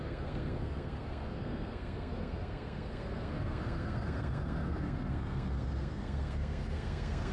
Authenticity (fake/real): fake